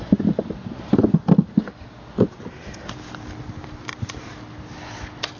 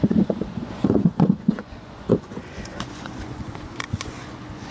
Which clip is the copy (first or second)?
second